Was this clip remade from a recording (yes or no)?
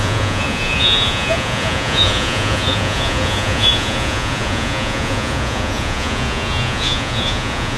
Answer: yes